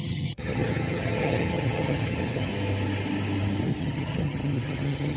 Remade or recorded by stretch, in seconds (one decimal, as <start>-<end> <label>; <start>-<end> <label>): 0.0-2.5 remade; 2.5-3.8 recorded; 3.8-5.2 remade